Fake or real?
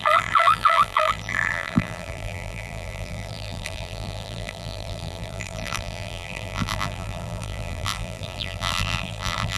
fake